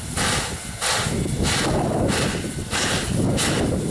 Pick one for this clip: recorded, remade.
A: recorded